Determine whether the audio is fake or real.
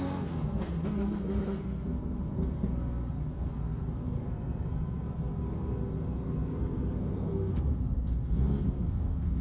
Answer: fake